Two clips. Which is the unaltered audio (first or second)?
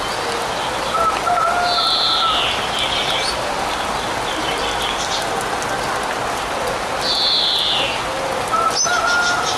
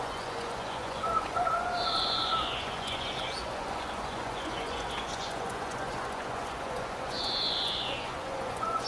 first